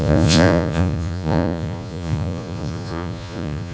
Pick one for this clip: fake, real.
fake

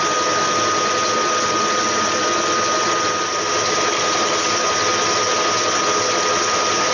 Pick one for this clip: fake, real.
real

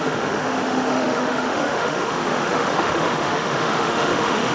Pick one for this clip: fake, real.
fake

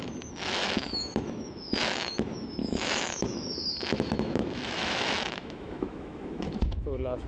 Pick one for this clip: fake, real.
fake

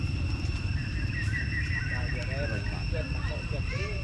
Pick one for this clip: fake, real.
real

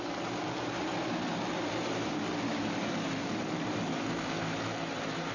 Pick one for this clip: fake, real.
fake